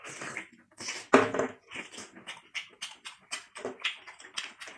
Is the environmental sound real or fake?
real